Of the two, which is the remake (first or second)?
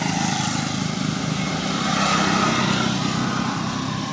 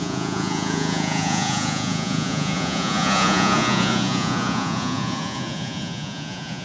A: second